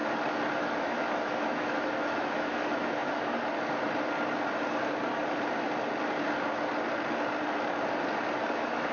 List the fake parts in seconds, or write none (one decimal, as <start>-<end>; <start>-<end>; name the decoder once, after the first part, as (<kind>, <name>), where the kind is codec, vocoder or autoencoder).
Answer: 0.6-3.3 (autoencoder, DAC-VAE); 8.5-8.9